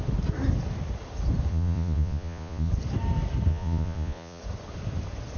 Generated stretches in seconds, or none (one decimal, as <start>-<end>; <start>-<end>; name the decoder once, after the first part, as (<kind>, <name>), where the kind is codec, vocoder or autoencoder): 1.5-2.7 (vocoder, Vocos); 3.5-4.4